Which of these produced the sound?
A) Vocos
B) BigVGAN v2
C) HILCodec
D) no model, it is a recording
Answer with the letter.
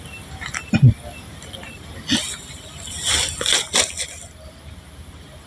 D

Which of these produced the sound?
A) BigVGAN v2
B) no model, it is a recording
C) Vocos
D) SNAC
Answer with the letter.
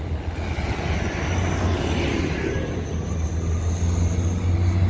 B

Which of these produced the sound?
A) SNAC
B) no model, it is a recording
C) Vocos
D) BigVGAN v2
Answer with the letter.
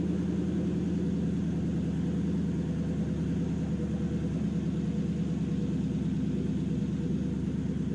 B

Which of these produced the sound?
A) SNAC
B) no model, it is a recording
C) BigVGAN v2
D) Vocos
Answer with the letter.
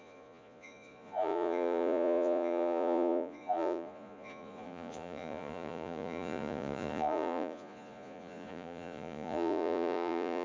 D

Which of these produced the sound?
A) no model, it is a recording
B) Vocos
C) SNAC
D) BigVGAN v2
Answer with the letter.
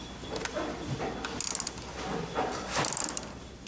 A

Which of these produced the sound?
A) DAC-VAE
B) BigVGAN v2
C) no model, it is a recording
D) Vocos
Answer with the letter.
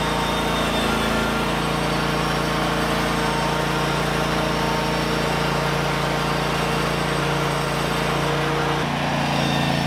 C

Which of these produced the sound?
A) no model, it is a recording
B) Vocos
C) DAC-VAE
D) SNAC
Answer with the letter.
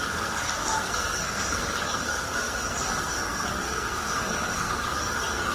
D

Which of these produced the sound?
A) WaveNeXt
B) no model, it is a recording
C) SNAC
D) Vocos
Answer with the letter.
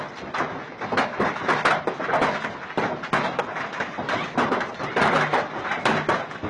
B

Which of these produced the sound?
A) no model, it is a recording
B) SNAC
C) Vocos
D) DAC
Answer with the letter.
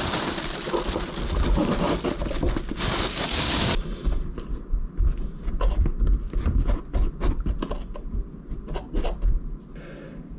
A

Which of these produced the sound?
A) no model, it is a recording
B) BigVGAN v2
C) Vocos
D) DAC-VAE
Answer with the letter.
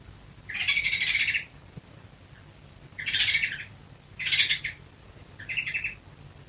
A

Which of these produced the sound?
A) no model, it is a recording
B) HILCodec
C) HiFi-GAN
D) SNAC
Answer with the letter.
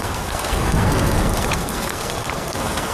D